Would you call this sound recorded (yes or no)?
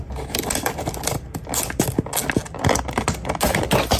yes